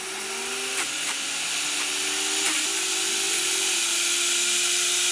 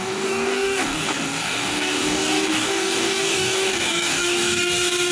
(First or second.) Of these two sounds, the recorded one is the first